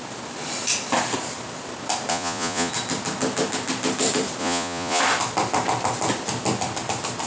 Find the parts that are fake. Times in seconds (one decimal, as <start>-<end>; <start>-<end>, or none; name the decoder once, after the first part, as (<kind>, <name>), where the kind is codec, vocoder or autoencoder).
2.1-2.7 (vocoder, Vocos); 4.4-5.0